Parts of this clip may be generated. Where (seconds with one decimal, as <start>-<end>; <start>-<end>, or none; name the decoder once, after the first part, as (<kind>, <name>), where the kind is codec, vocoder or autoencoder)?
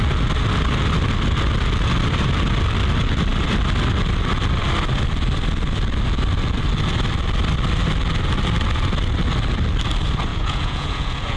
10.3-11.4 (vocoder, Vocos)